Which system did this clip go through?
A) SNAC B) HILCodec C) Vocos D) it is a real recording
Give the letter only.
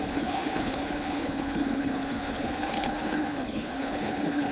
B